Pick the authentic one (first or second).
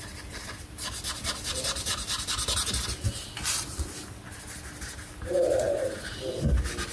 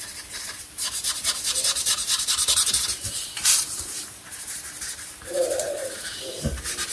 first